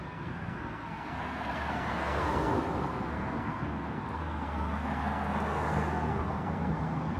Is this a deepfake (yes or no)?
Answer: yes